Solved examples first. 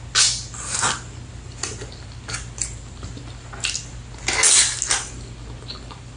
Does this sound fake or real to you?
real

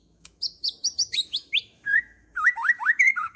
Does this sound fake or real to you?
fake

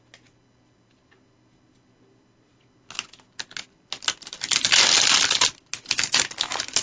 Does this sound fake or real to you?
real